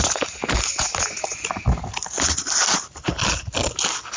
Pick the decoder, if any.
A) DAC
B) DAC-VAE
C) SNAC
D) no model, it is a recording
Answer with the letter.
D